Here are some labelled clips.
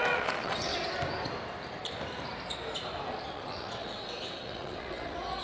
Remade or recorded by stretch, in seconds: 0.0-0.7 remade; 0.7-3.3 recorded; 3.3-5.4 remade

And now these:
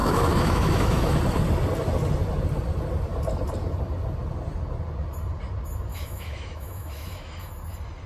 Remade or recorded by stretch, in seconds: 0.0-1.2 remade; 1.2-5.9 recorded; 5.9-7.5 remade; 7.5-8.1 recorded

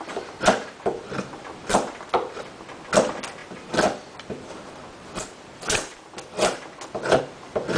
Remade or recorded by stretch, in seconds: 0.0-7.8 recorded

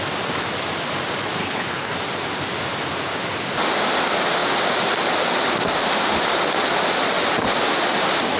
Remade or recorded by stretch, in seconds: 0.0-1.4 recorded; 1.4-1.9 remade; 1.9-8.4 recorded

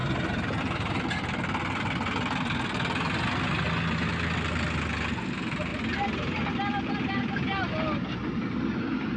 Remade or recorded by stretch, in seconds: 0.0-9.2 recorded

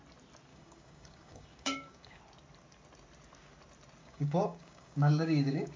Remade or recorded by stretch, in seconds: 0.0-0.5 recorded; 0.5-2.2 remade; 2.2-4.0 recorded; 4.0-5.8 remade

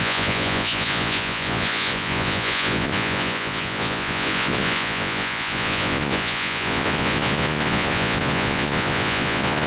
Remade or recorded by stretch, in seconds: 0.0-9.7 remade

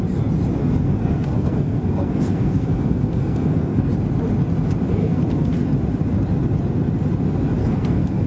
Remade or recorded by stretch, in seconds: 0.0-0.6 recorded; 0.6-3.9 remade; 3.9-5.0 recorded; 5.0-5.6 remade; 5.6-7.6 recorded; 7.6-8.3 remade